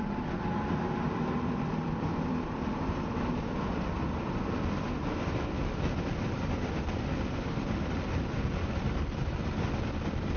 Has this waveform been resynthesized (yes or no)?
yes